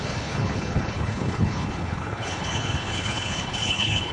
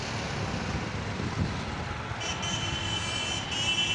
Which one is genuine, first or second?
second